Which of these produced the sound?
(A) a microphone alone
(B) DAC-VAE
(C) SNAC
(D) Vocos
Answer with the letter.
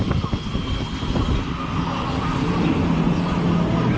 A